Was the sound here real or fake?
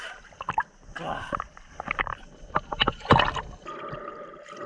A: fake